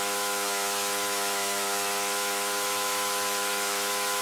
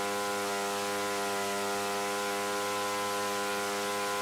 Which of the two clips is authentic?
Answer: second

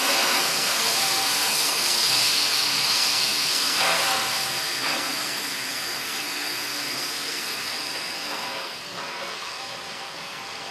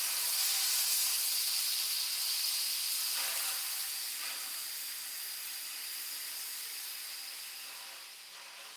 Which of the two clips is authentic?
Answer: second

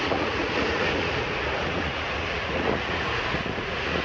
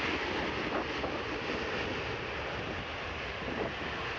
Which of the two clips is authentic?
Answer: second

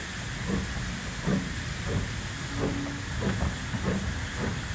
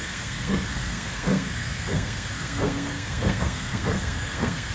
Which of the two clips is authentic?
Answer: first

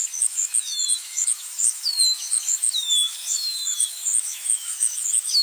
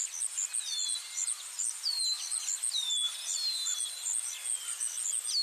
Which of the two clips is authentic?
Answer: second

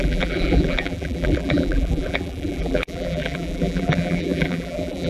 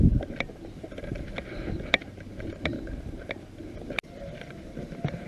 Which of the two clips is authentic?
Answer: second